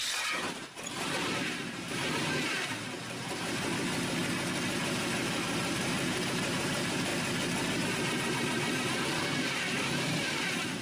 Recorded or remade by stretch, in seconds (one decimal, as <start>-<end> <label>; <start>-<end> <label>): 0.0-4.2 remade; 4.2-4.8 recorded; 4.8-7.1 remade; 7.1-7.9 recorded; 7.9-10.8 remade

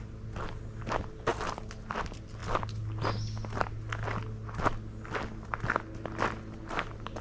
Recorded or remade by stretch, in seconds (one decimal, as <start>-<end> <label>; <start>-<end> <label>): 0.0-7.2 recorded

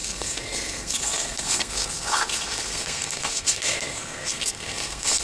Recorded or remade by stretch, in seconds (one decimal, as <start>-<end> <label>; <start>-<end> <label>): 0.0-5.2 remade

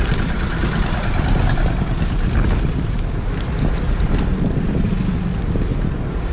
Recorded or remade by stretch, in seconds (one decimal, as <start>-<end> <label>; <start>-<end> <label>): 0.0-6.3 recorded

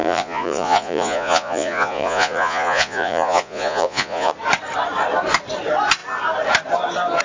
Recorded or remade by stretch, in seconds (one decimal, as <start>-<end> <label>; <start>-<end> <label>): 0.0-4.3 remade; 4.3-7.2 recorded